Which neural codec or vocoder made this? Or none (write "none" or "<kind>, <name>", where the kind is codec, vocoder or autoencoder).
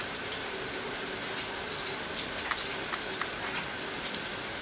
none